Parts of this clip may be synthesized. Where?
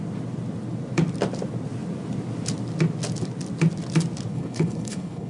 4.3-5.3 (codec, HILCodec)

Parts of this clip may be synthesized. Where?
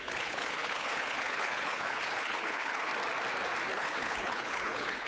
0.0-2.9 (codec, HILCodec); 3.7-5.1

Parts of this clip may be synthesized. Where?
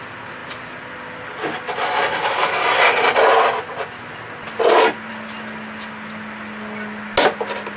none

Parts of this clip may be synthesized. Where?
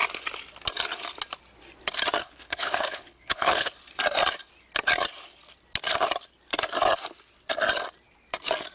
2.2-3.7 (codec, HILCodec)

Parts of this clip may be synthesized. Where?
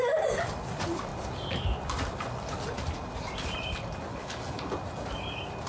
4.1-4.7 (codec, HILCodec)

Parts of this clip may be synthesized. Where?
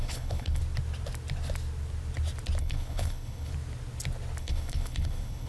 0.0-0.6 (codec, HILCodec); 2.6-3.5; 4.4-5.5